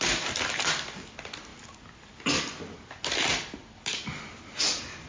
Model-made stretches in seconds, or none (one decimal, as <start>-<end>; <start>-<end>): none

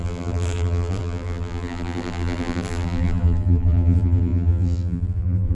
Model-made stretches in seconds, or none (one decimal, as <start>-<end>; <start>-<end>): 0.0-5.5

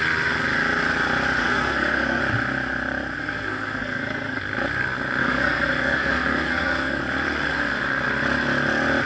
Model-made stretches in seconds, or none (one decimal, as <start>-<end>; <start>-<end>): 1.4-2.2; 3.2-4.4; 5.2-7.0

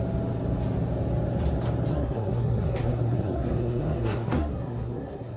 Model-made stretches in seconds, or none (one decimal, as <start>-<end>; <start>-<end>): 1.9-5.4

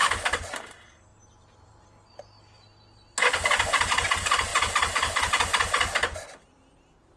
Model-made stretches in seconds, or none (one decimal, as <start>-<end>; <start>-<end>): none

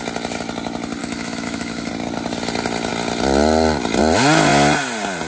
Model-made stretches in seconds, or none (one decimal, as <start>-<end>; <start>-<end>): 1.0-1.9

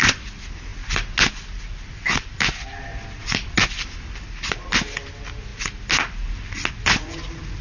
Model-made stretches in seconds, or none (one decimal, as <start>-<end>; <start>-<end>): none